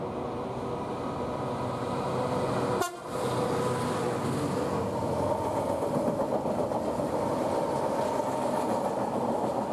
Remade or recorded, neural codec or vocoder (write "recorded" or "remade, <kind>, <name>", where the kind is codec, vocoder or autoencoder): recorded